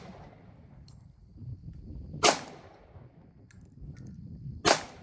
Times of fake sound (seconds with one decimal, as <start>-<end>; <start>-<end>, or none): none